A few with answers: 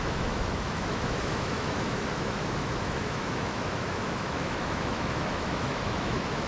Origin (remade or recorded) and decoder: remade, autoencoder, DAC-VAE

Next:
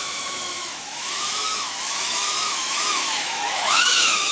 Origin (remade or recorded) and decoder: remade, autoencoder, DAC-VAE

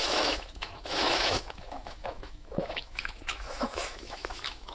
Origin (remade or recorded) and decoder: remade, autoencoder, DAC-VAE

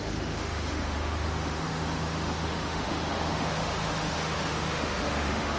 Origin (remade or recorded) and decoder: remade, autoencoder, DAC-VAE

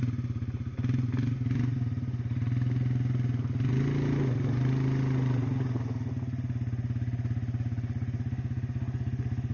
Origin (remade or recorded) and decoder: recorded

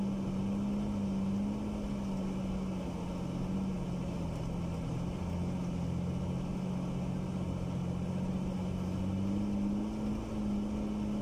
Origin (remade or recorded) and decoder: recorded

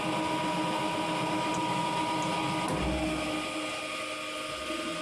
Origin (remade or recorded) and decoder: recorded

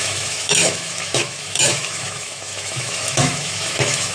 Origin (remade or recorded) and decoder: remade, autoencoder, DAC-VAE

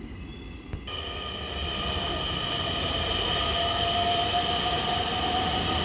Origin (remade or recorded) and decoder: recorded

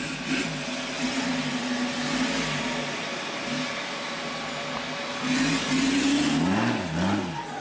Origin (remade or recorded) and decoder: recorded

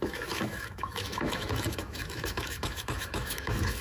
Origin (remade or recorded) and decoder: remade, autoencoder, DAC-VAE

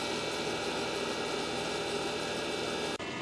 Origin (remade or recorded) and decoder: recorded